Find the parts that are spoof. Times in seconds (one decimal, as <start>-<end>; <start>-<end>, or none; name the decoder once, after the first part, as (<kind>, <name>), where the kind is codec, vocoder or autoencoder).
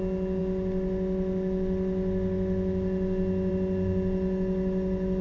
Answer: none